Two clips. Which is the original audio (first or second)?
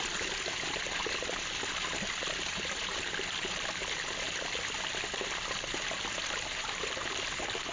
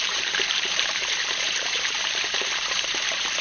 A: first